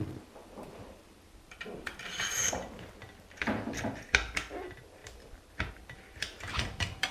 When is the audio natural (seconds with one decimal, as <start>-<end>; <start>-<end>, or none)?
2.4-3.4

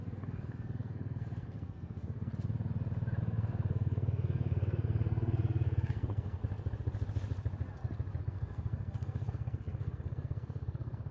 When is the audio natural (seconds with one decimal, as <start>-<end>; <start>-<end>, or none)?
2.3-3.2; 6.4-8.2

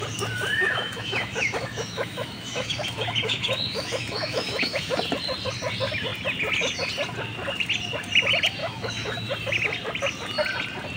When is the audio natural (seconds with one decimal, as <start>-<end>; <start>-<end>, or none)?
0.0-0.6; 4.9-8.6; 9.3-11.0